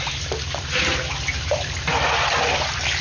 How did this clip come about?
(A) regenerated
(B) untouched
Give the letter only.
B